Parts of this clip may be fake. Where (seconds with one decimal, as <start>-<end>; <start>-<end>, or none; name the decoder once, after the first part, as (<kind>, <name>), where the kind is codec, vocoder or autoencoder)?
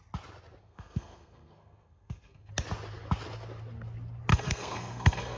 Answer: 0.6-2.5 (codec, SNAC); 4.3-5.4